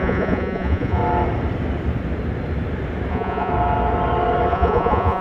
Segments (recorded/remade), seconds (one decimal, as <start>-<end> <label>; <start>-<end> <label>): 0.0-1.0 remade; 1.0-3.1 recorded; 3.1-3.5 remade; 3.5-4.5 recorded; 4.5-5.2 remade